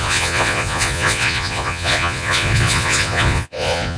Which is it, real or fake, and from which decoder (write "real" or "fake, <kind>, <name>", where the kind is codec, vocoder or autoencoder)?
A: fake, vocoder, Vocos